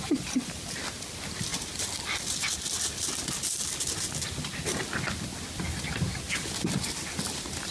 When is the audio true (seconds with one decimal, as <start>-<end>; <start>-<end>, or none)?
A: 0.0-7.7